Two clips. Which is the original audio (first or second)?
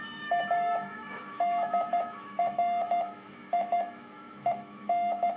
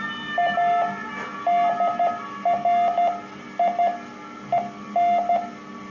second